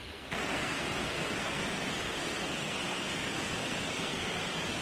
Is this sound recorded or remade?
remade